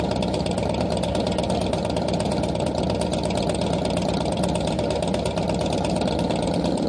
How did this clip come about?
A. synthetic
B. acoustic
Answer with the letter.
B